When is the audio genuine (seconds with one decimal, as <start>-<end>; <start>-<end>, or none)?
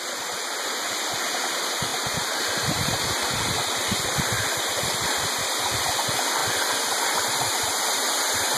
0.0-8.6